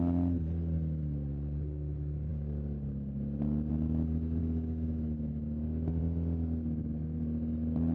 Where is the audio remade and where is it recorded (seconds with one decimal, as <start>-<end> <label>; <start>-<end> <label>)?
0.0-4.4 recorded; 4.4-6.0 remade; 6.0-7.9 recorded